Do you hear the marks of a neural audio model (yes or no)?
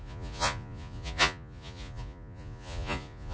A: yes